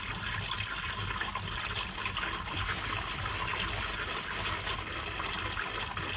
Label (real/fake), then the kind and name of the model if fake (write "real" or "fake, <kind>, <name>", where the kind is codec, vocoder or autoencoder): real